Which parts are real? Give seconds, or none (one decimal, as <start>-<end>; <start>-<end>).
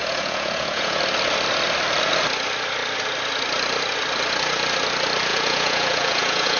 1.0-5.3